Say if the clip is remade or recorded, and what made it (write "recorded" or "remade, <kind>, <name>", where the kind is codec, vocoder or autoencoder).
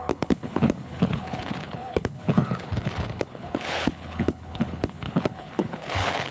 remade, codec, HILCodec